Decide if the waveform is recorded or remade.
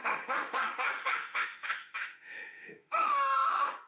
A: remade